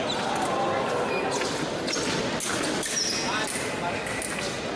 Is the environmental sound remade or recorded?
recorded